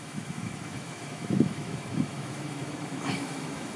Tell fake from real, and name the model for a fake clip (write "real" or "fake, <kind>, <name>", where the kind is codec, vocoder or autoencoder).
fake, autoencoder, DAC-VAE